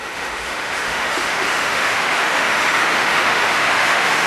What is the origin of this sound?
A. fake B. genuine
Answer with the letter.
A